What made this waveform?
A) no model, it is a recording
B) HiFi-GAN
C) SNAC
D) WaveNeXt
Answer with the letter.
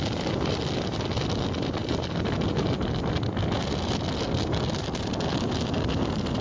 A